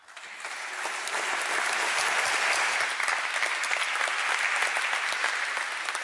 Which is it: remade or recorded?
recorded